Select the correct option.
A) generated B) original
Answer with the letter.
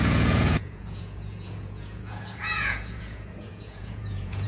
A